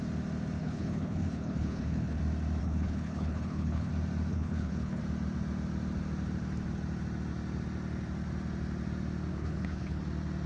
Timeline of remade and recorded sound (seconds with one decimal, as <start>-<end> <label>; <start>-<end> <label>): 0.0-0.6 recorded; 0.6-2.2 remade; 2.2-2.6 recorded; 2.6-3.9 remade; 3.9-4.3 recorded; 4.3-5.0 remade; 5.0-9.3 recorded; 9.3-10.0 remade; 10.0-10.5 recorded